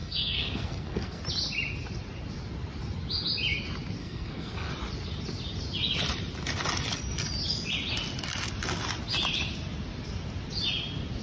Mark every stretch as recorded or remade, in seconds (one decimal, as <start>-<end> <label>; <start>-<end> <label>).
0.0-1.2 remade; 1.2-4.0 recorded; 4.0-4.7 remade; 4.7-11.2 recorded